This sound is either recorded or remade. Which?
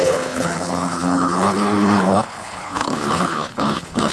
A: remade